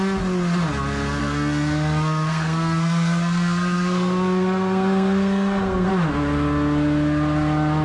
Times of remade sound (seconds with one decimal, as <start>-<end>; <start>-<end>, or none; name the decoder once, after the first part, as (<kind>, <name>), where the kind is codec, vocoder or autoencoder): 1.2-5.9 (codec, SNAC)